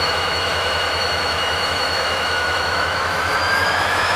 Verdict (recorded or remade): remade